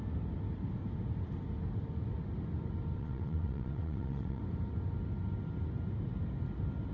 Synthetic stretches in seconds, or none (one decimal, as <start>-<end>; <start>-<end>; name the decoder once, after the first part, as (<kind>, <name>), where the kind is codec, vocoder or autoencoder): 3.0-4.4 (vocoder, WaveNeXt)